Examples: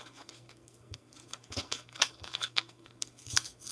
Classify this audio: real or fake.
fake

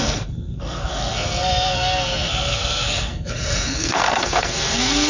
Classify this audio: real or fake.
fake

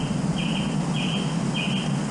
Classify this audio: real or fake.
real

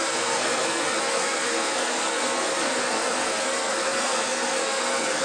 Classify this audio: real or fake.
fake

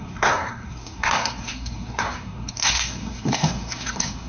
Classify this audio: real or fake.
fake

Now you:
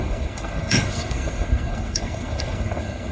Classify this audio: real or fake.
fake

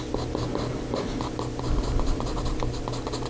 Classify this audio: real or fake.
real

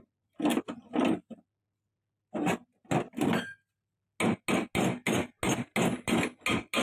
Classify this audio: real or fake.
real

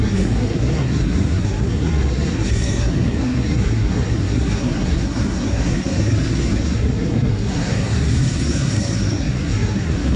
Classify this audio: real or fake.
fake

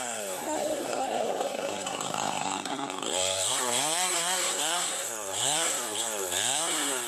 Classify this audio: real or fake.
fake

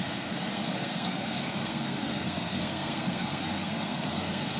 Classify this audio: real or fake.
fake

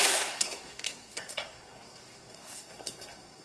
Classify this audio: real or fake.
fake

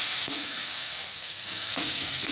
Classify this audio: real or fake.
fake